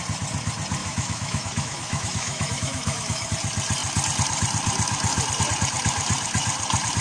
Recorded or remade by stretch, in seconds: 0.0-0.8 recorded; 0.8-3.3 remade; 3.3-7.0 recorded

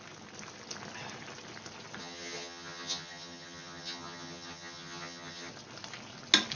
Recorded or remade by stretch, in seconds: 0.0-2.0 recorded; 2.0-5.5 remade; 5.5-6.6 recorded

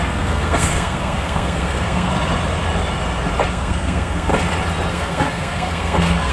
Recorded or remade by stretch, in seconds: 0.0-2.1 remade; 2.1-3.5 recorded; 3.5-4.3 remade; 4.3-4.9 recorded; 4.9-6.3 remade

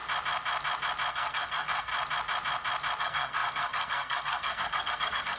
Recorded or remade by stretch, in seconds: 0.0-1.1 recorded; 1.1-1.9 remade; 1.9-3.0 recorded; 3.0-5.4 remade

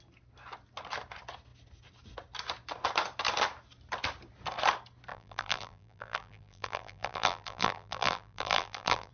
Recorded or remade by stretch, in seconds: 0.0-5.1 recorded; 5.1-9.1 remade